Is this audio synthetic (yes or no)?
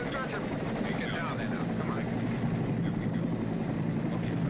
no